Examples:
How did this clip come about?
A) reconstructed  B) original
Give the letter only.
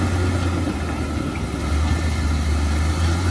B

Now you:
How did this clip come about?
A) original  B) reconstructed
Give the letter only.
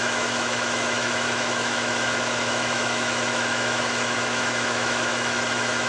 B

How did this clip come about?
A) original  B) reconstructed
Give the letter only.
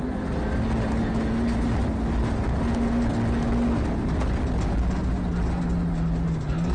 A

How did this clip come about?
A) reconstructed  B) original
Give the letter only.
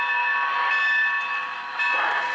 B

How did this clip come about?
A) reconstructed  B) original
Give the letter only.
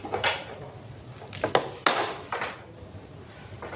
B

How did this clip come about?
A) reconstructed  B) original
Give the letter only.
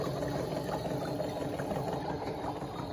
B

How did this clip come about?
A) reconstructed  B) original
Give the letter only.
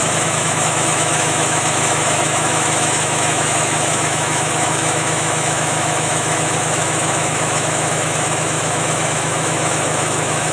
A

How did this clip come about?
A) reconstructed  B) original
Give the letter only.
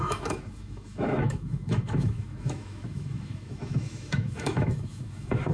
A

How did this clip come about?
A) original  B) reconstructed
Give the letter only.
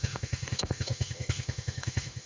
B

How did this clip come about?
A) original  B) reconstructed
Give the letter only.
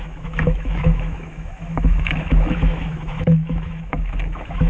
B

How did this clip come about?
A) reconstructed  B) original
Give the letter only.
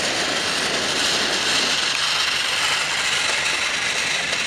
B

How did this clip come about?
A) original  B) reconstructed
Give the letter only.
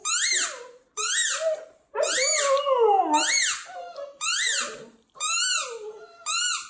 A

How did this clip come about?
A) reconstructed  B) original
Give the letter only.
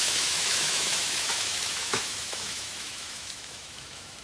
A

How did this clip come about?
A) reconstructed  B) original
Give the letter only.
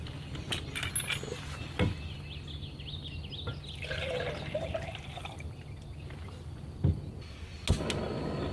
B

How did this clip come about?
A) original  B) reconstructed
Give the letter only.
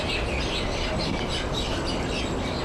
A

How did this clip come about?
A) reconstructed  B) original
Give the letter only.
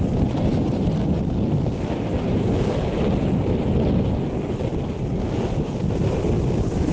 B